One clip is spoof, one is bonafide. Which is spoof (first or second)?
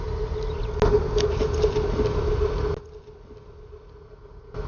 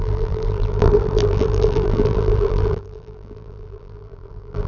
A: second